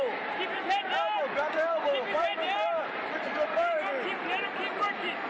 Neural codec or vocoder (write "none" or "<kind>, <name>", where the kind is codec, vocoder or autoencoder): vocoder, BigVGAN v2